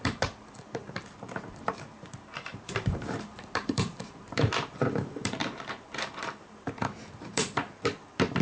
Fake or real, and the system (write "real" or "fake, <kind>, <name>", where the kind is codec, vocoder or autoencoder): fake, vocoder, BigVGAN v2